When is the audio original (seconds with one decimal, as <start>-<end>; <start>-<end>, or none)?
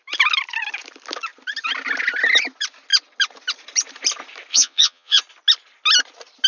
0.0-4.5; 5.2-6.5